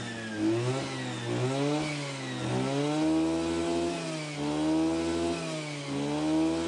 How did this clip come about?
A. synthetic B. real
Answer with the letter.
B